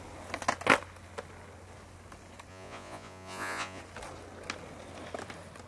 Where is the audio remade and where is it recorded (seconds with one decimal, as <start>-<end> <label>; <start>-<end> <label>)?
0.0-2.5 recorded; 2.5-3.8 remade; 3.8-5.7 recorded